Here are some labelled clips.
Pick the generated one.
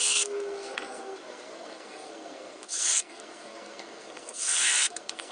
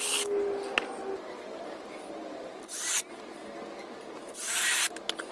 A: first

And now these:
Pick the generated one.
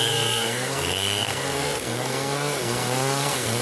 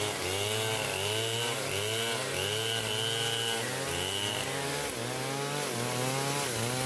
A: first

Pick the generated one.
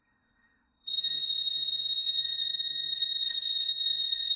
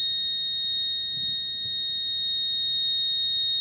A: first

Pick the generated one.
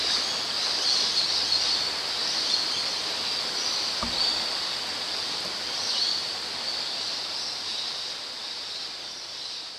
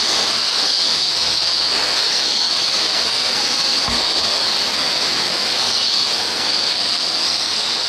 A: second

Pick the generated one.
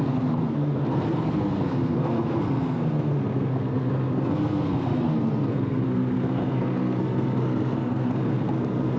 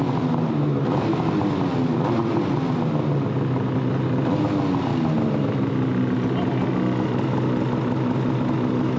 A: first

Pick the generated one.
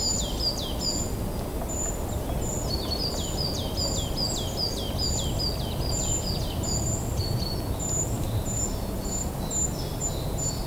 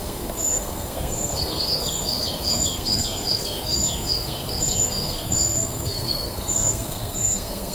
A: second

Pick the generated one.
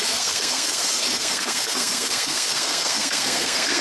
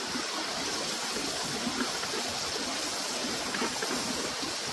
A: first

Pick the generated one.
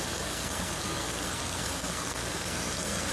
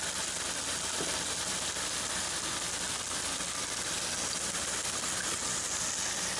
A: first